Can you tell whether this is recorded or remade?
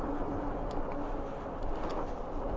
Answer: recorded